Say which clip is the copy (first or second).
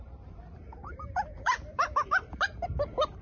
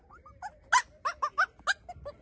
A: first